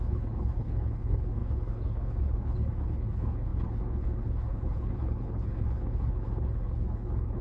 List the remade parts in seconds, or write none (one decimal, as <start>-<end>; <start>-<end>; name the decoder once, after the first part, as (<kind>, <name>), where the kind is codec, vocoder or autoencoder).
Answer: 0.0-7.4 (codec, HILCodec)